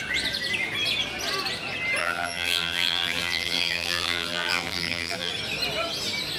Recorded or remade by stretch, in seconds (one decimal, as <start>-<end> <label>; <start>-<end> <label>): 0.0-2.0 recorded; 2.0-5.3 remade; 5.3-6.4 recorded